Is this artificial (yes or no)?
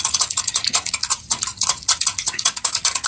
yes